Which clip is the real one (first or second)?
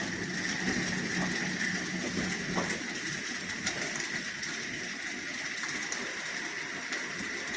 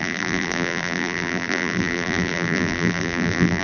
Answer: first